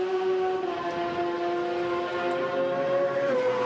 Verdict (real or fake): real